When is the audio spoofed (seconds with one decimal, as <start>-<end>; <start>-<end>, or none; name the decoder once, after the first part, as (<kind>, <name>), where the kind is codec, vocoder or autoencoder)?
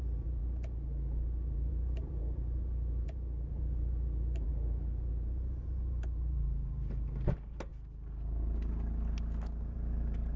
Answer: 0.0-0.4 (vocoder, BigVGAN v2); 1.5-7.7; 9.6-10.4